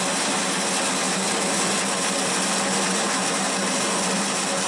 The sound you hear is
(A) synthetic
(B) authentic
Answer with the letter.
B